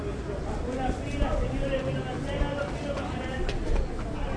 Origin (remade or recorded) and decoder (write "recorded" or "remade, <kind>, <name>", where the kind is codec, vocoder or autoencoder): recorded